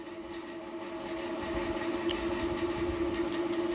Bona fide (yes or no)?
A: yes